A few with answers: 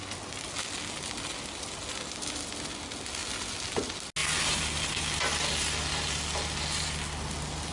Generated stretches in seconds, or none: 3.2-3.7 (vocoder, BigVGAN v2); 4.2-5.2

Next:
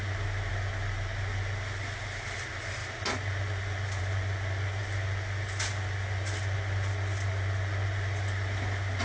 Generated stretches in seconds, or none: none